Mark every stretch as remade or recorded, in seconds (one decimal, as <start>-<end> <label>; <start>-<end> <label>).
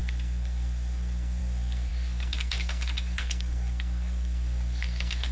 0.0-5.3 remade